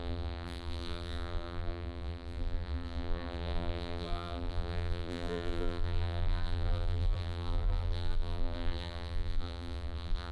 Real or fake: fake